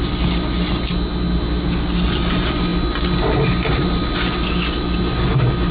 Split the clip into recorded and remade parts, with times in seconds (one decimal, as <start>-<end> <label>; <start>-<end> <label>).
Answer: 0.0-5.7 recorded